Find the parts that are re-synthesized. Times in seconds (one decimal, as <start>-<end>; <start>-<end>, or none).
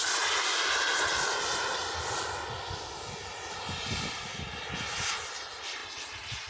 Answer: none